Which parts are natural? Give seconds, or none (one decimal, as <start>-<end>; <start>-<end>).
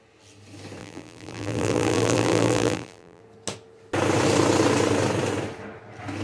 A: 0.0-0.8; 3.2-6.2